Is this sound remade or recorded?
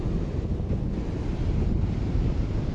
recorded